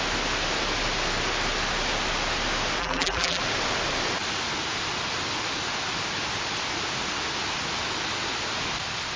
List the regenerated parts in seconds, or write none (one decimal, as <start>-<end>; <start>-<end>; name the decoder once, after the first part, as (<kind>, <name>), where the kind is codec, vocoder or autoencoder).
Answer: 2.8-3.4 (vocoder, BigVGAN v2)